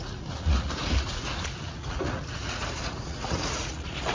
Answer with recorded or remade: remade